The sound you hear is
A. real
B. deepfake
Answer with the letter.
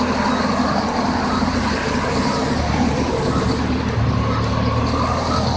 A